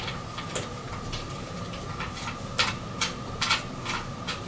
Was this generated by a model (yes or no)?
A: no